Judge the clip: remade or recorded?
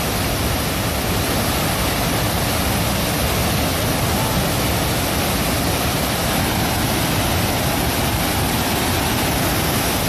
recorded